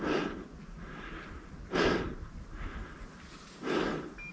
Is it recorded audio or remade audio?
recorded